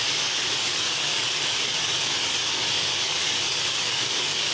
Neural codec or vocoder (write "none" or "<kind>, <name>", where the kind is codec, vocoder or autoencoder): codec, DAC